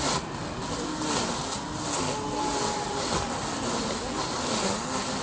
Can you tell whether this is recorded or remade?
recorded